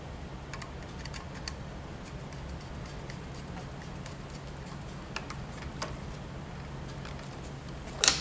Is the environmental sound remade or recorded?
recorded